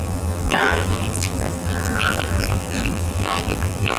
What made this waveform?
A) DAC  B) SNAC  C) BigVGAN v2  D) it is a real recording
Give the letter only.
C